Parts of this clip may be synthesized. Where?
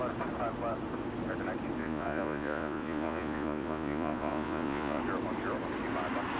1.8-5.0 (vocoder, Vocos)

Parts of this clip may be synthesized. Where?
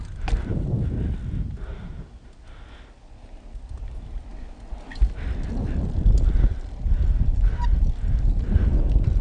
4.3-5.0 (vocoder, BigVGAN v2)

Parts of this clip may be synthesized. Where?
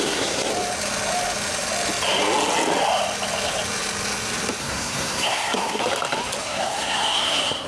0.0-0.5 (codec, SNAC); 4.6-5.8; 6.4-7.7